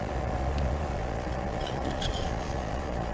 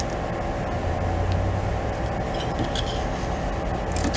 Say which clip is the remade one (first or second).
first